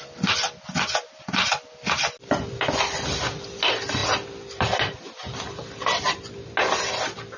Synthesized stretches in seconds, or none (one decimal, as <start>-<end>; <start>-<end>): none